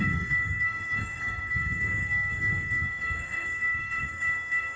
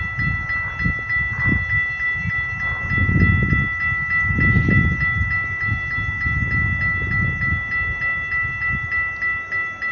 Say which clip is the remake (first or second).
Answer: first